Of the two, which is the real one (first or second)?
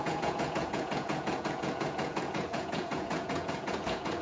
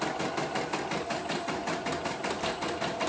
second